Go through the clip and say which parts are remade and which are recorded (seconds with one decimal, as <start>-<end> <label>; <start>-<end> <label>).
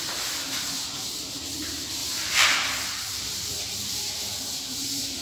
0.0-0.4 recorded; 0.4-1.0 remade; 1.0-2.0 recorded; 2.0-4.3 remade; 4.3-5.2 recorded